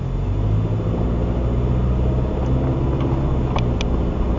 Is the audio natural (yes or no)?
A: yes